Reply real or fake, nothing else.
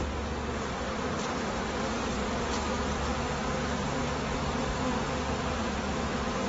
real